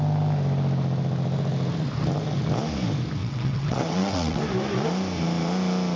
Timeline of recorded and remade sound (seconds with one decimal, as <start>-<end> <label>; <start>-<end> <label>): 0.0-3.2 recorded; 3.2-4.4 remade; 4.4-6.0 recorded